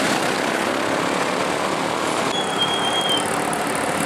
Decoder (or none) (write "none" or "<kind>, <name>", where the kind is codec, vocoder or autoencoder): none